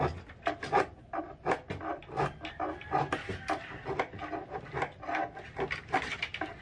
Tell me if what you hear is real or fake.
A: real